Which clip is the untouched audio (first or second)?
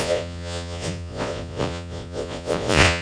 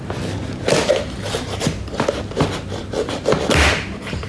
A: second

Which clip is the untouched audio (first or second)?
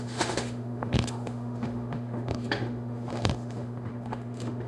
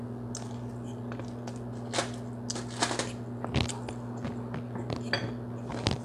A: second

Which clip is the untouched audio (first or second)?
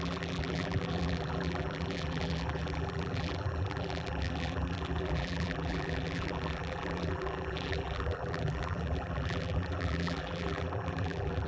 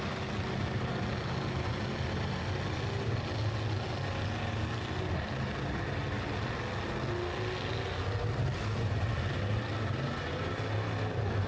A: second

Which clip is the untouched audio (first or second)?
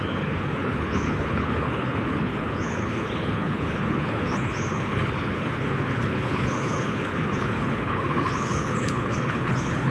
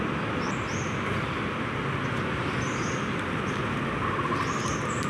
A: second